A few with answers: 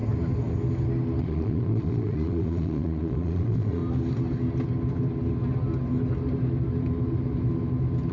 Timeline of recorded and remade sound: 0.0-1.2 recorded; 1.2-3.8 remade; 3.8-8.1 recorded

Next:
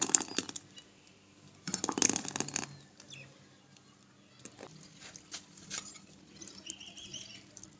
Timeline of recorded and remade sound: 0.0-7.8 recorded

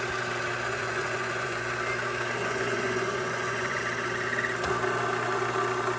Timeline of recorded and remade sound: 0.0-0.7 recorded; 0.7-1.7 remade; 1.7-2.4 recorded; 2.4-3.8 remade; 3.8-6.0 recorded

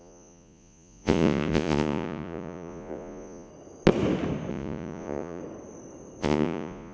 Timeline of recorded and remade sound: 0.0-3.5 remade; 3.5-4.5 recorded; 4.5-5.4 remade; 5.4-6.2 recorded; 6.2-6.9 remade

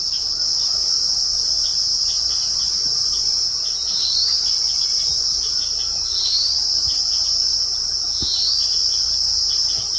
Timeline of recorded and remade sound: 0.0-10.0 recorded